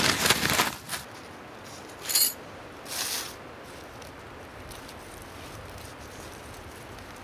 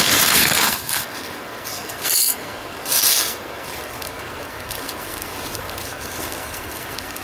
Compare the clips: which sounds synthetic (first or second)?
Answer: second